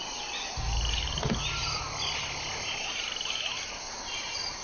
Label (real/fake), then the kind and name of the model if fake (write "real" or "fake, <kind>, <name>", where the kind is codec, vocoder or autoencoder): real